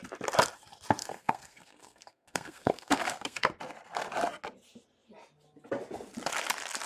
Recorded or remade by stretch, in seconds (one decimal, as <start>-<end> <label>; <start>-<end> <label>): 0.0-1.0 recorded; 1.0-3.5 remade; 3.5-6.9 recorded